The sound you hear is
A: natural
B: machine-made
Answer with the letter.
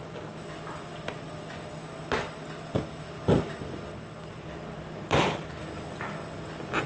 A